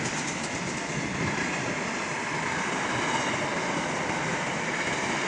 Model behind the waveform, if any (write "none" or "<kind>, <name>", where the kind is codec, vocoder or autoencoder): none